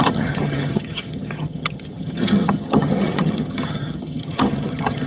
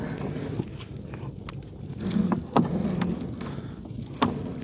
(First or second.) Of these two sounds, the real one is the second